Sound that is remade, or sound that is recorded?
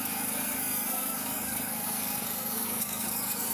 remade